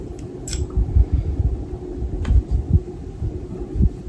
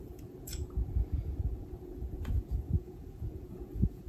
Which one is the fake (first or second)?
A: second